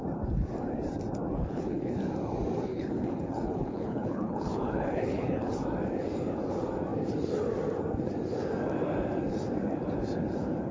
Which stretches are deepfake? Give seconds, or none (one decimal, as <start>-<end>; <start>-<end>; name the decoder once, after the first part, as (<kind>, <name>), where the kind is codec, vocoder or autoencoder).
1.4-1.9 (codec, HILCodec); 2.7-5.5